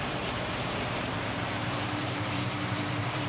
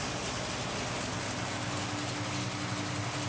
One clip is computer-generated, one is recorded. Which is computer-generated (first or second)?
first